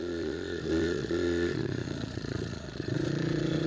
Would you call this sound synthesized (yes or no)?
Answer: yes